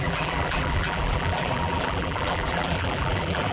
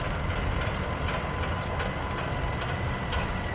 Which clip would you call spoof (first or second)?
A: first